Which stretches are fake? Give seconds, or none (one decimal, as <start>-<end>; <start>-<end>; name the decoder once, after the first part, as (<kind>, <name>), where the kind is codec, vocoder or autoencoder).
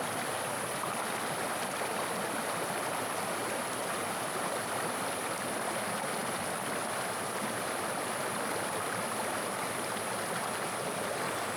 none